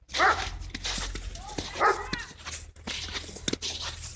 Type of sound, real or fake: real